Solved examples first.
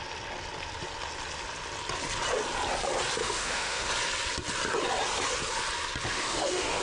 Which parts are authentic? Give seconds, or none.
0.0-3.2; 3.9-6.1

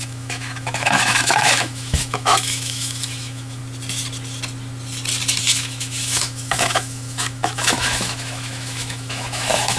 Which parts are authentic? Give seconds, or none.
3.6-5.4

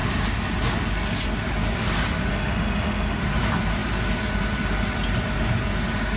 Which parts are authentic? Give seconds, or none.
0.0-2.3; 3.2-6.2

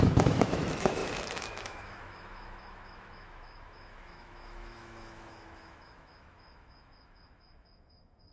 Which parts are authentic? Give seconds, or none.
none

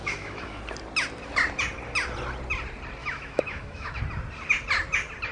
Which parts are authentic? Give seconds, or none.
0.6-3.0; 4.0-5.3